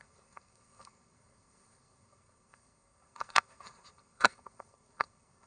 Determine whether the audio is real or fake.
fake